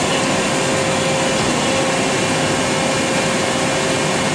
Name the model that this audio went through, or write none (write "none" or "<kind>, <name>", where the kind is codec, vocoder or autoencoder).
none